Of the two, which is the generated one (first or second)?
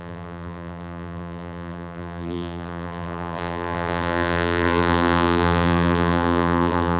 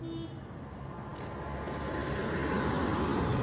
first